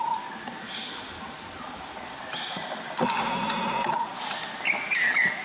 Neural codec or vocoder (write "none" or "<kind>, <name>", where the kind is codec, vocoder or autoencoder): none